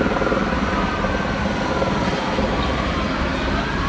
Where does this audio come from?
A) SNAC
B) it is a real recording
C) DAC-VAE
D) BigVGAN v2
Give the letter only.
B